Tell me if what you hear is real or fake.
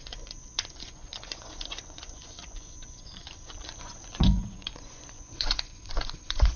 fake